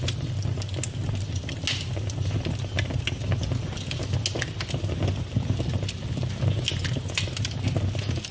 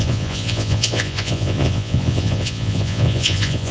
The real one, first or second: first